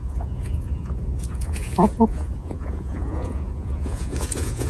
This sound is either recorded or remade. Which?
remade